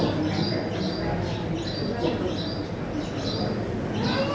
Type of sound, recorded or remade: recorded